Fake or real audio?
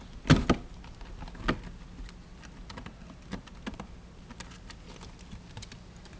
real